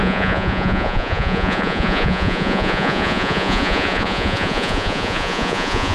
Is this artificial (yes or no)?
yes